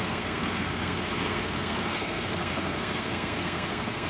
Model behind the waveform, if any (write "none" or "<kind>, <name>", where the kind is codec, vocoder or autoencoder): codec, SNAC